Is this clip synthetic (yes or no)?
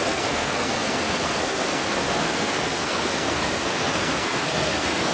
yes